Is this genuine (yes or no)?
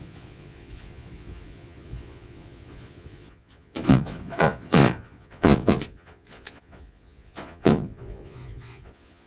no